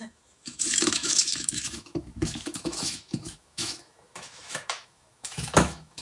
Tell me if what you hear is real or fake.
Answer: fake